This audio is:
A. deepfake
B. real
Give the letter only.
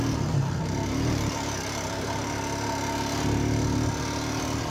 B